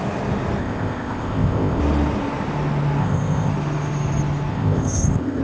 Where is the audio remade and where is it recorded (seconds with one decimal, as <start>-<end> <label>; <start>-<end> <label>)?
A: 0.0-0.6 recorded; 0.6-1.8 remade; 1.8-3.0 recorded; 3.0-3.5 remade; 3.5-4.5 recorded; 4.5-5.4 remade